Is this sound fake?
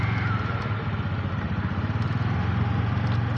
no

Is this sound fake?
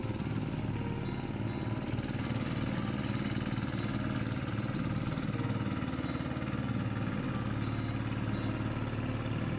no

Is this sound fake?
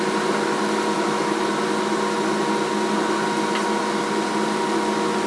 no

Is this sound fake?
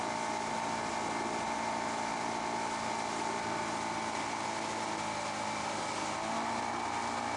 no